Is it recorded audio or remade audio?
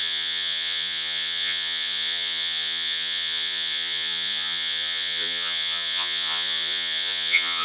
remade